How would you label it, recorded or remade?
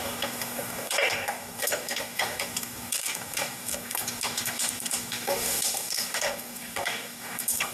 remade